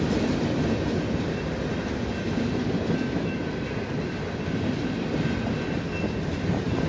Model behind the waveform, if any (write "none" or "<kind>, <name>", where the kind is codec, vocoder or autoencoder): none